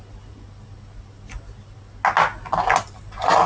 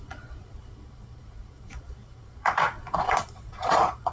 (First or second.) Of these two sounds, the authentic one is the first